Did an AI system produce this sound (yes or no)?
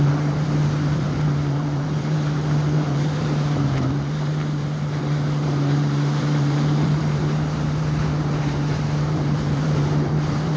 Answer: yes